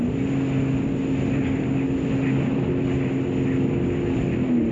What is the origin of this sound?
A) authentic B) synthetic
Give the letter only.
A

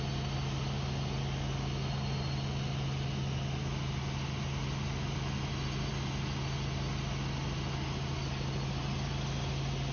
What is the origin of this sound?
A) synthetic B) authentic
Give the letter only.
B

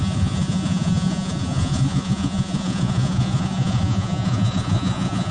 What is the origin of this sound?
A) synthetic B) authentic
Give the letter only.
A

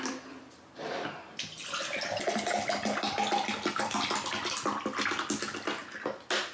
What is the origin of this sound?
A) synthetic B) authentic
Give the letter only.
B